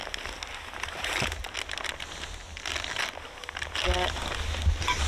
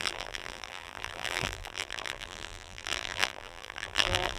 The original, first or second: first